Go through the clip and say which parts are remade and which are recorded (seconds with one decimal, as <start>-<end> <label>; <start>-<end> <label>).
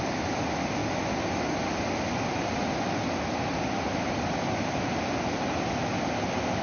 0.0-6.6 recorded